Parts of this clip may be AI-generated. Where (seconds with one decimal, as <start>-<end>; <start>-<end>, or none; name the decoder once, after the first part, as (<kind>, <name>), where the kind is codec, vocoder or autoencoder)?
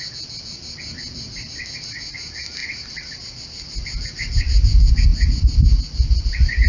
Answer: 2.6-3.2 (vocoder, BigVGAN v2)